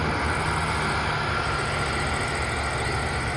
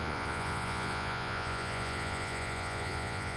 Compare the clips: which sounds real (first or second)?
first